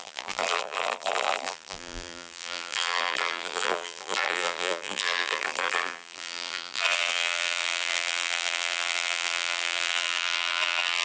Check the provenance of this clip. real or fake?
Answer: fake